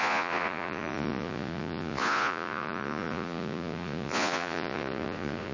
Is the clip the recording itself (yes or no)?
no